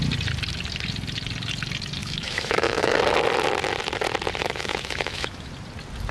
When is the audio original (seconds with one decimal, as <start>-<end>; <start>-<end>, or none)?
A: 0.0-2.0; 2.9-4.4; 5.5-6.1